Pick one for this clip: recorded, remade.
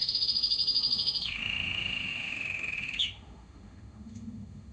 remade